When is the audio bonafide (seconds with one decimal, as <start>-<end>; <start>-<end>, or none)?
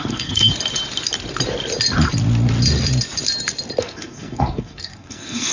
0.5-3.8